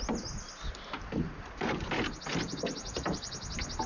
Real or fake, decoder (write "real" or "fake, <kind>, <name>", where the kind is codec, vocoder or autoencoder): real